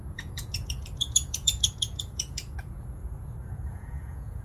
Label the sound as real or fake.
fake